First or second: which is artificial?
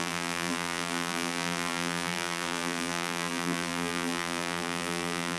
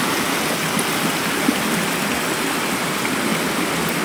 first